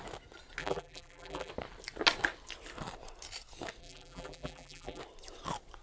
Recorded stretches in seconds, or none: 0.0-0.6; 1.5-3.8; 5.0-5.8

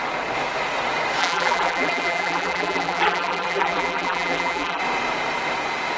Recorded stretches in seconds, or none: 0.0-1.2; 4.8-6.0